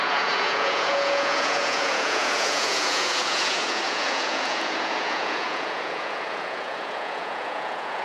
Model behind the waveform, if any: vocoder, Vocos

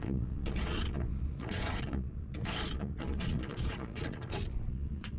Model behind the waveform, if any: vocoder, Vocos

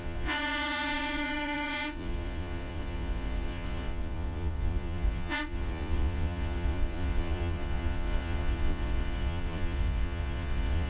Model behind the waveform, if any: vocoder, Vocos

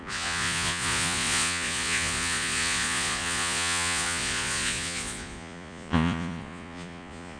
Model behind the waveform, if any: vocoder, Vocos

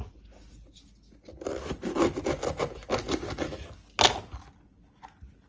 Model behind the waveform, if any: none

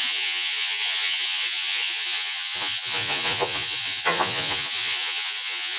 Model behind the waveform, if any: vocoder, Vocos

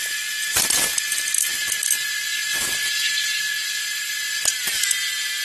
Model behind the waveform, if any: none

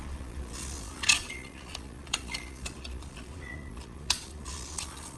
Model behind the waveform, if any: vocoder, Vocos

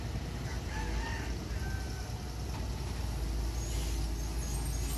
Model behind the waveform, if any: none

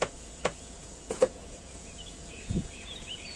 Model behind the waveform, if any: vocoder, Vocos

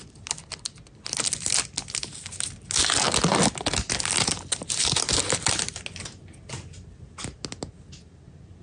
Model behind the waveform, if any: none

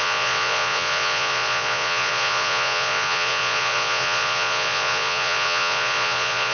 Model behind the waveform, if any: vocoder, Vocos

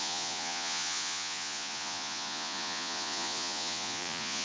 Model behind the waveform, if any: vocoder, Vocos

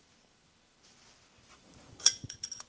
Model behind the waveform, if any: none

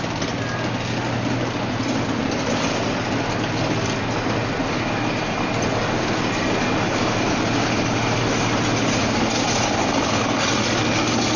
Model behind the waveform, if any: none